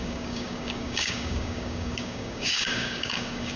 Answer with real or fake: fake